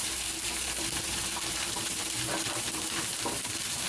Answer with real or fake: fake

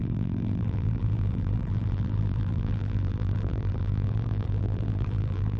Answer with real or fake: fake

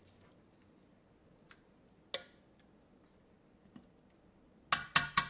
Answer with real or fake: real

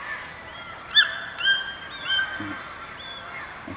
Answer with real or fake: real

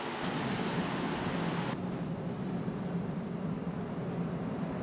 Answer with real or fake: real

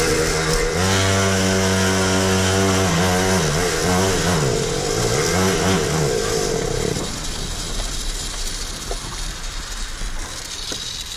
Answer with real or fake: real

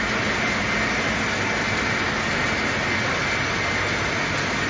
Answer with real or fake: real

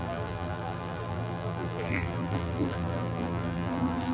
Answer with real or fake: fake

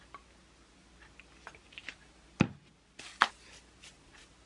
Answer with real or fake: real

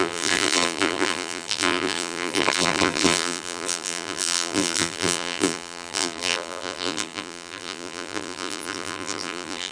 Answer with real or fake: fake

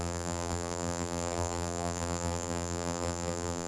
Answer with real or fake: fake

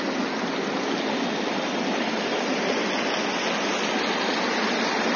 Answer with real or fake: real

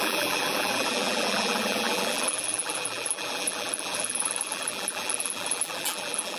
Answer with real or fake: fake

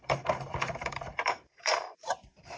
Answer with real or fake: fake